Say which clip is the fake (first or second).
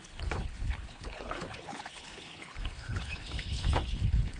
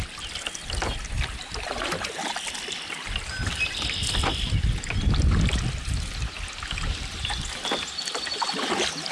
first